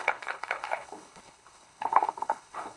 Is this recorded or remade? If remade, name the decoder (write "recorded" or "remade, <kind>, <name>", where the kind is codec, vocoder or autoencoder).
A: remade, codec, HILCodec